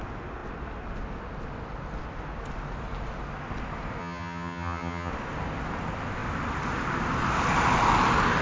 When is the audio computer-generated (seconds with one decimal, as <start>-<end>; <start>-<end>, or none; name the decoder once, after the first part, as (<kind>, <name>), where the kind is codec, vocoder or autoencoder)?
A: 4.0-5.1 (vocoder, HiFi-GAN)